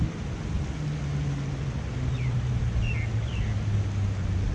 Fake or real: real